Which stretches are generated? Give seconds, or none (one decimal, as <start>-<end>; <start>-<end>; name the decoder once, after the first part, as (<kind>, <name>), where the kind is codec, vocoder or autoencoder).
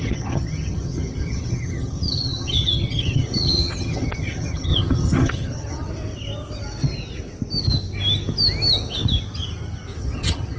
0.0-5.9 (vocoder, HiFi-GAN); 10.0-10.6